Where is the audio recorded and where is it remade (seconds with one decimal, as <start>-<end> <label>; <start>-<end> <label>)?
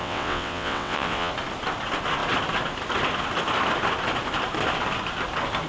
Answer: 0.0-1.3 remade; 1.3-5.7 recorded